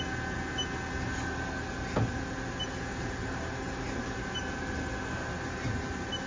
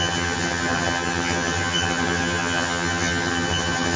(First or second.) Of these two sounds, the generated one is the second